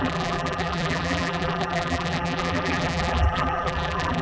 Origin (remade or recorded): remade